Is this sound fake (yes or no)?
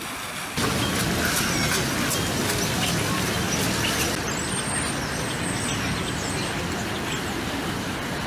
no